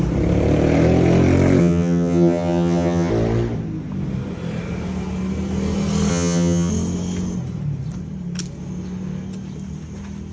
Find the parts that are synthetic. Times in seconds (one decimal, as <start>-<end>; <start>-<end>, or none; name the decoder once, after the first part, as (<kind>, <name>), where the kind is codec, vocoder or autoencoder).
1.6-3.1 (vocoder, HiFi-GAN); 6.1-6.7